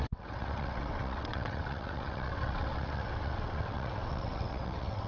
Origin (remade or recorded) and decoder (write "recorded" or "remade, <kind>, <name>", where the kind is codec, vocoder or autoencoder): remade, vocoder, WaveNeXt